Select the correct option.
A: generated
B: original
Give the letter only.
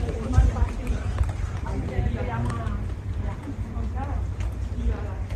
B